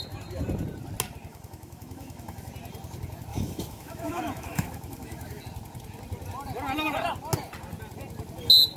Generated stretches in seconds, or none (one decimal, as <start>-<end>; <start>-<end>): 1.3-2.5; 3.3-5.4